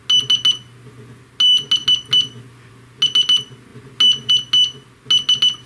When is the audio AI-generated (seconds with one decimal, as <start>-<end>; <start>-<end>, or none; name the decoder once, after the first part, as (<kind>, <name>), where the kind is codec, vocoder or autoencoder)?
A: none